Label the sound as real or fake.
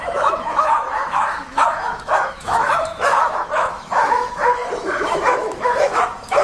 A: fake